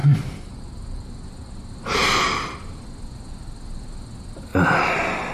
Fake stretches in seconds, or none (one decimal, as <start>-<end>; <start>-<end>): 0.0-2.9; 4.5-5.3